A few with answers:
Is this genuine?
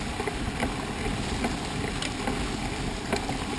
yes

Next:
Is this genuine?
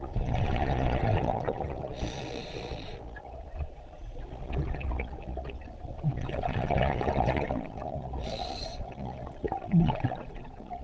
no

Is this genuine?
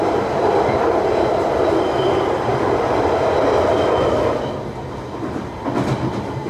yes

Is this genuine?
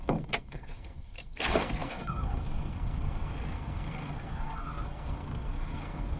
no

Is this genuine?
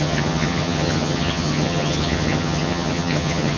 no